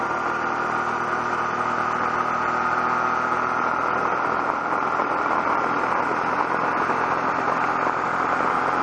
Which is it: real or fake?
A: real